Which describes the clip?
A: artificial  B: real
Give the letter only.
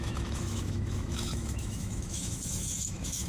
A